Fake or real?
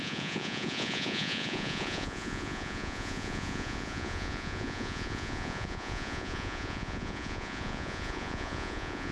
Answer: fake